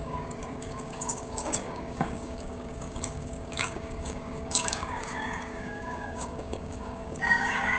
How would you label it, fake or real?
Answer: fake